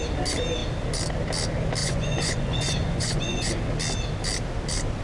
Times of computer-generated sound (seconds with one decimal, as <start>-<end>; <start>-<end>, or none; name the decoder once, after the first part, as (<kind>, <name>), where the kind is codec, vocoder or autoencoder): 1.8-3.5 (vocoder, Vocos)